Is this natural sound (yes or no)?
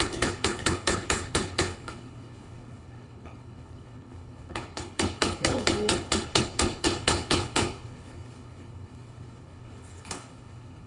no